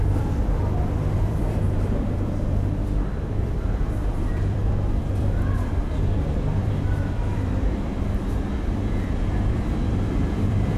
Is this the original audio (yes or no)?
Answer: no